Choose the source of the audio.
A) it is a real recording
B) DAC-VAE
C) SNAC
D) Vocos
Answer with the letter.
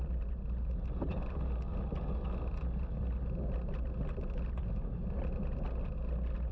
A